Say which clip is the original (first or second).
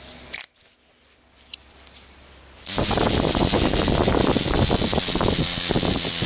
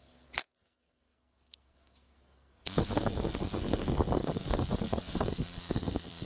first